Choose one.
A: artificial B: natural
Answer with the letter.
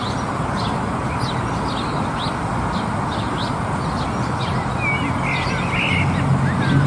B